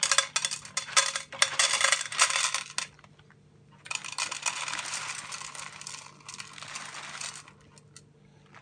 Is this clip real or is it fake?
real